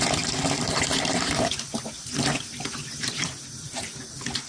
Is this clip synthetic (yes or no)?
no